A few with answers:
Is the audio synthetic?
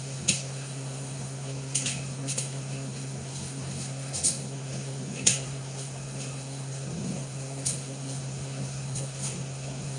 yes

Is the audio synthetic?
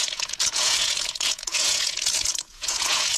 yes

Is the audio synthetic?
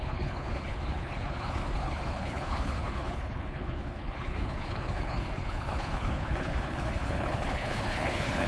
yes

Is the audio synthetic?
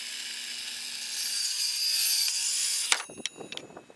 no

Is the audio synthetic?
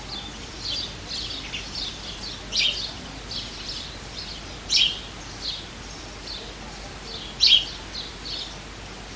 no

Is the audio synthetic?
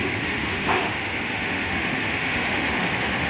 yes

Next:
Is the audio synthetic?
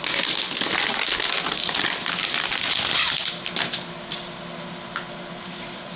no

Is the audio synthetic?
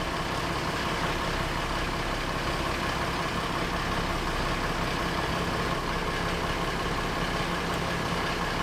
no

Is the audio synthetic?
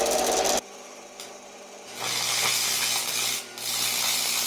no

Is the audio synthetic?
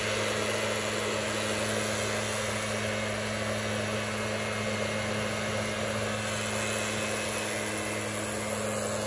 no